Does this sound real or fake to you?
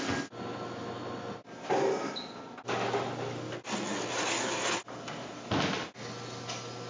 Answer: real